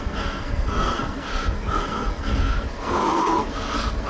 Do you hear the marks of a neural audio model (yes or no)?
yes